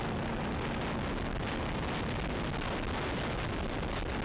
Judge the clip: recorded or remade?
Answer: recorded